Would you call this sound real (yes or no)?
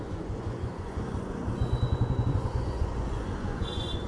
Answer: no